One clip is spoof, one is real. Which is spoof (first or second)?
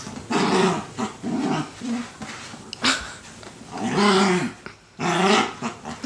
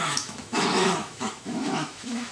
second